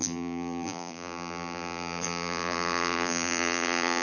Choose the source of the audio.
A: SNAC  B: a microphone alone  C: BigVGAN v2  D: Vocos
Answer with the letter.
C